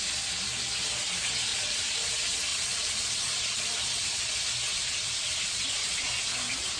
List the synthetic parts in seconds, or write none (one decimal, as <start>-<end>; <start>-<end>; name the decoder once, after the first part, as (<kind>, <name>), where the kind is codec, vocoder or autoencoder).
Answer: 1.5-2.1 (vocoder, Vocos); 2.5-4.2; 4.7-6.1